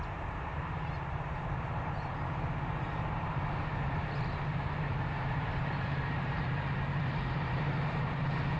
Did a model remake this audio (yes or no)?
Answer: yes